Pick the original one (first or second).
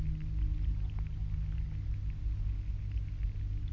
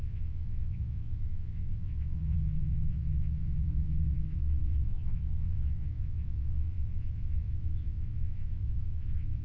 first